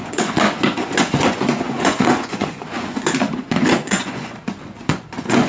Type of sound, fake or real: fake